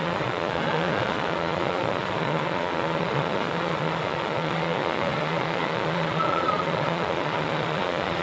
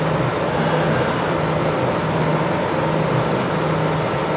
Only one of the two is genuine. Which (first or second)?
second